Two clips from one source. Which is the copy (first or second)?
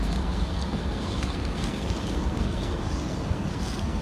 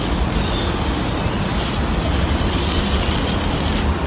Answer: first